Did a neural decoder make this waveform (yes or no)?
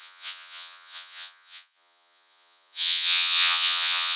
yes